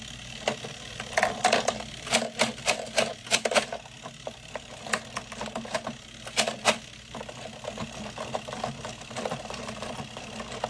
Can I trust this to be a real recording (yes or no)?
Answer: yes